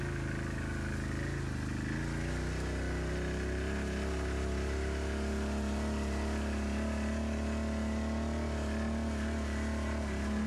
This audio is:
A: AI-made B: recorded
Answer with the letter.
B